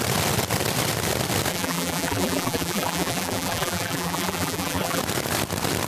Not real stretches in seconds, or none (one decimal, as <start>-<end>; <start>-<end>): 1.5-5.0